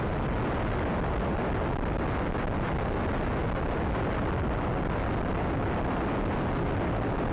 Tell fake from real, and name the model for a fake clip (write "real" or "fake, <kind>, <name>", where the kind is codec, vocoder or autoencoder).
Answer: real